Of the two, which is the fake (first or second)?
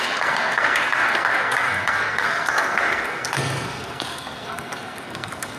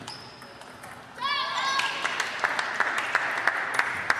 first